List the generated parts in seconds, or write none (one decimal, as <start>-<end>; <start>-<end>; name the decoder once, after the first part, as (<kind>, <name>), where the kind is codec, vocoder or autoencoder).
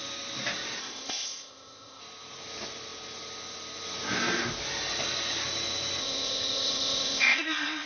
0.8-2.0 (codec, ZipCodec); 6.0-7.9